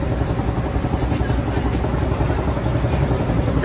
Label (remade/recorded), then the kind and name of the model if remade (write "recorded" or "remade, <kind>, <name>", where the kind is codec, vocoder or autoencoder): recorded